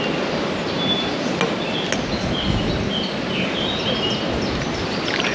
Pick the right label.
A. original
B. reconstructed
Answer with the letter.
A